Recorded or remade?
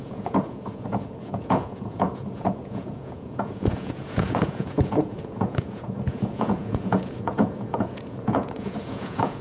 remade